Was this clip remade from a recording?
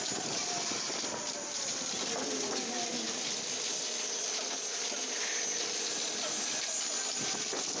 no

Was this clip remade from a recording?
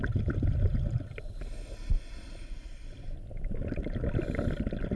no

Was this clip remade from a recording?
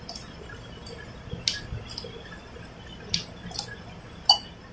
no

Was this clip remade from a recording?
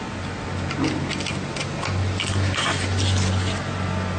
no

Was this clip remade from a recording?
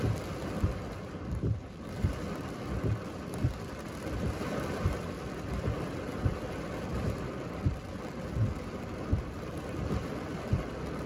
no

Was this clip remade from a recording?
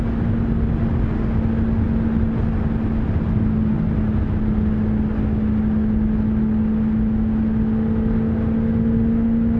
no